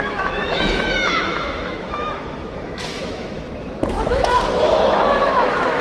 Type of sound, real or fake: fake